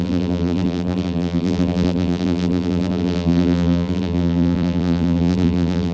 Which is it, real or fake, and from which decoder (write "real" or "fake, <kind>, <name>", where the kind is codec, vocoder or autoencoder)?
fake, vocoder, BigVGAN v2